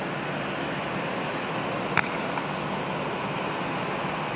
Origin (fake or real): real